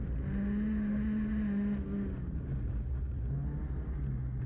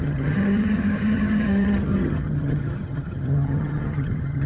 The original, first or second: first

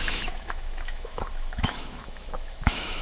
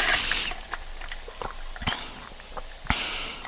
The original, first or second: second